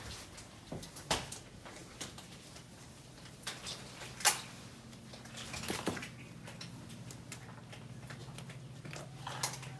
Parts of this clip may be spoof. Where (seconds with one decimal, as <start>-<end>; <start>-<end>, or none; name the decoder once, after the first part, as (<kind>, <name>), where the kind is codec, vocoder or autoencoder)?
none